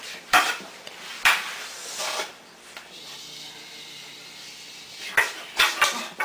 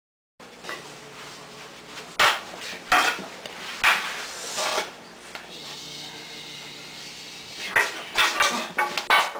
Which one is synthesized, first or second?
first